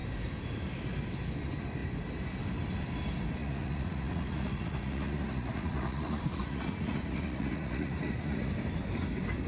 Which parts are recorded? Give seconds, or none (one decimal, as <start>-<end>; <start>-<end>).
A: 0.0-3.4; 8.5-9.5